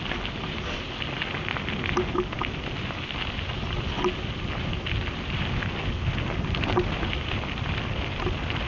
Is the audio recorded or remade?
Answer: recorded